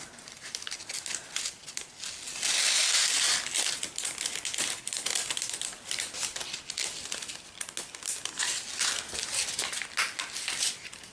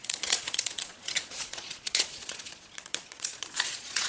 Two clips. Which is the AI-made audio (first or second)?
second